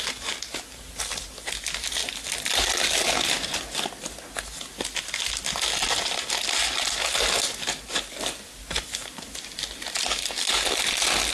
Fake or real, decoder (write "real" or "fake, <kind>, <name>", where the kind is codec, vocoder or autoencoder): real